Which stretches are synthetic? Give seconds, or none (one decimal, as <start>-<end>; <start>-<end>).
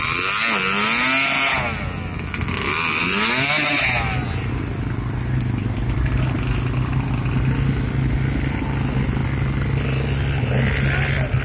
3.0-4.5